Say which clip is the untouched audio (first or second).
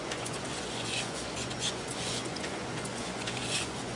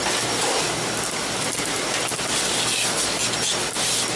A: second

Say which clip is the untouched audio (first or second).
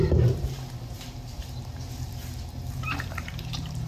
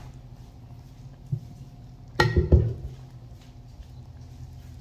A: second